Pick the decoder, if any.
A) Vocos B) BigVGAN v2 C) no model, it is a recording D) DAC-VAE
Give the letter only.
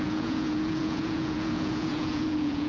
A